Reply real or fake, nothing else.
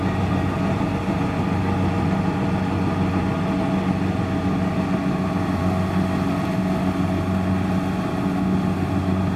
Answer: real